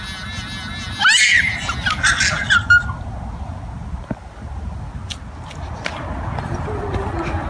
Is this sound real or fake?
real